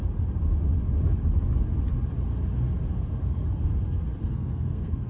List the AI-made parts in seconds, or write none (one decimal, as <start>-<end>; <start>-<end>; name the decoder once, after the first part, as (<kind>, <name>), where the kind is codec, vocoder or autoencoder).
2.9-3.7 (codec, SNAC); 4.2-5.1